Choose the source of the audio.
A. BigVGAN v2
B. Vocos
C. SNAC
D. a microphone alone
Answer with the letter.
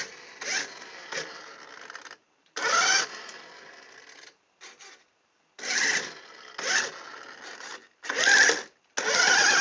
D